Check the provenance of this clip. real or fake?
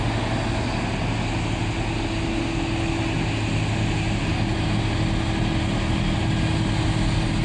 real